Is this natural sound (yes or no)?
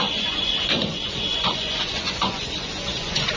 no